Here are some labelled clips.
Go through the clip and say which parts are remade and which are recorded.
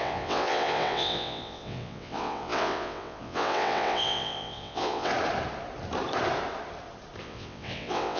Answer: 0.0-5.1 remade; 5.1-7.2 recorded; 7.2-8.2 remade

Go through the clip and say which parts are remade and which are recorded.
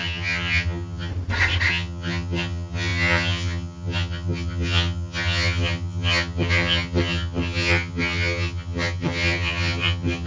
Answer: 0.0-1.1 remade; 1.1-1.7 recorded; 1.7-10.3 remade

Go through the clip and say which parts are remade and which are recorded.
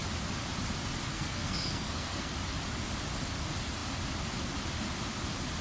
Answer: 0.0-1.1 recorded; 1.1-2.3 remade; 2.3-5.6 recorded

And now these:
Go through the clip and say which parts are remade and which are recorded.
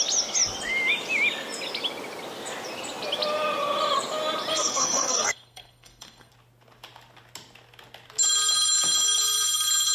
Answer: 0.0-4.5 recorded; 4.5-6.3 remade; 6.3-9.9 recorded